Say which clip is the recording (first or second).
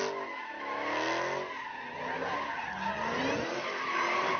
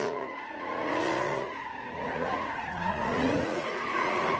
first